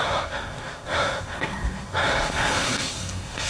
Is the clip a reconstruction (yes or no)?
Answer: yes